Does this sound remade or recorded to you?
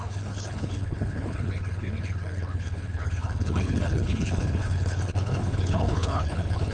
remade